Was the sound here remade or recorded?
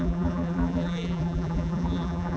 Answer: remade